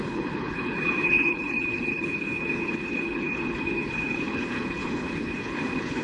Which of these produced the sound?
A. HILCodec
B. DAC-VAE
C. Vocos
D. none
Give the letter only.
A